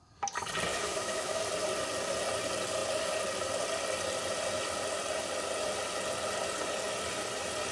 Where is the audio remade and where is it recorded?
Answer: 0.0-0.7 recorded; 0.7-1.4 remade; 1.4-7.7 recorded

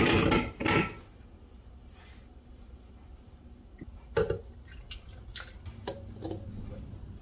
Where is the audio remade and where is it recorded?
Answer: 0.0-7.2 recorded

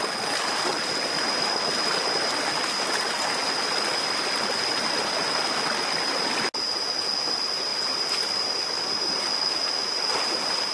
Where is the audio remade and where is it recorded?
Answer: 0.0-10.7 recorded

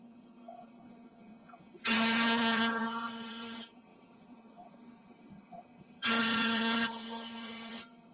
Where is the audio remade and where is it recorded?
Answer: 0.0-8.1 remade

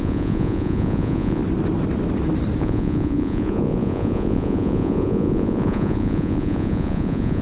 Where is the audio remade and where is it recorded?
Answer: 0.0-1.4 remade; 1.4-2.6 recorded; 2.6-7.4 remade

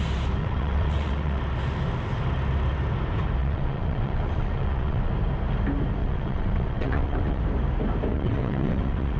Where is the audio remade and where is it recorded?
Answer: 0.0-0.4 recorded; 0.4-1.4 remade; 1.4-3.4 recorded; 3.4-5.1 remade; 5.1-6.0 recorded; 6.0-7.4 remade; 7.4-8.1 recorded; 8.1-9.2 remade

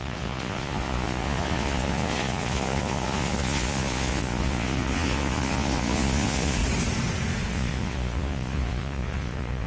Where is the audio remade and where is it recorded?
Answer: 0.0-6.6 remade; 6.6-7.5 recorded; 7.5-9.7 remade